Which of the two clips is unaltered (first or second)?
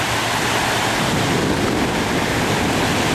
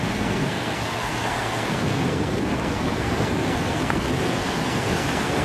first